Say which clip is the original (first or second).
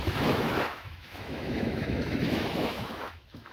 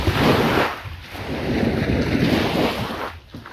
second